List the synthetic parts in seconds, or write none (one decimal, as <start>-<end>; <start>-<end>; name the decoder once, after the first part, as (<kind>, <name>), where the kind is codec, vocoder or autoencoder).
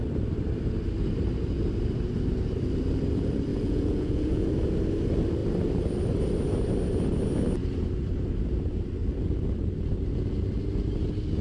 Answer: 3.5-4.5 (vocoder, Vocos)